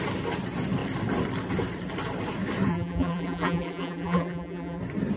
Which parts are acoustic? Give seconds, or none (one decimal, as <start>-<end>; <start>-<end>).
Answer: 0.0-2.7; 4.8-5.2